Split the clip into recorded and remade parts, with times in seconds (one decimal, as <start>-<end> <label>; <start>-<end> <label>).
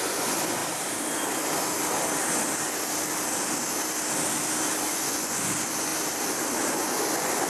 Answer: 0.0-0.6 remade; 0.6-4.8 recorded; 4.8-5.9 remade; 5.9-6.6 recorded; 6.6-7.5 remade